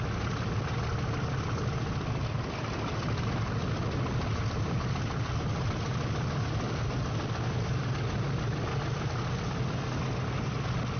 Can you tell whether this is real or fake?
real